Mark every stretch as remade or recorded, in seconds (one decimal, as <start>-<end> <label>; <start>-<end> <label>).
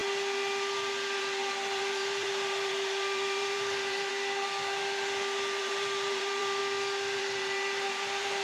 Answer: 0.0-1.2 recorded; 1.2-4.1 remade; 4.1-5.6 recorded; 5.6-6.6 remade; 6.6-7.2 recorded; 7.2-8.4 remade